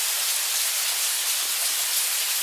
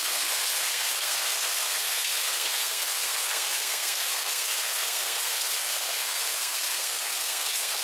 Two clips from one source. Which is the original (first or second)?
first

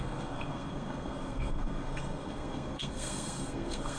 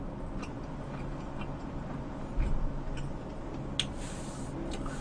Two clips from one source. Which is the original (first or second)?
second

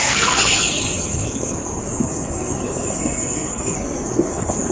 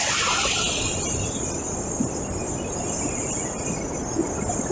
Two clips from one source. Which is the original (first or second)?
second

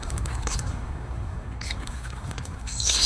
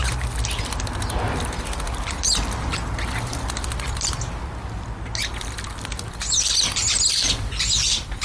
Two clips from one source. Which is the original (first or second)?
second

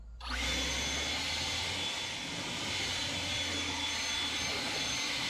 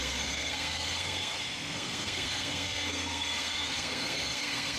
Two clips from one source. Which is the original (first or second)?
first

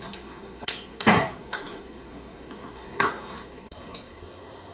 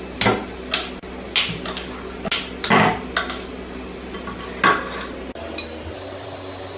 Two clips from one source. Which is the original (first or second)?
second